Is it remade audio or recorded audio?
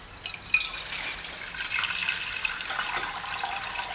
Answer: recorded